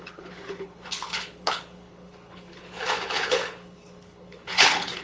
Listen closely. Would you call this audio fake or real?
fake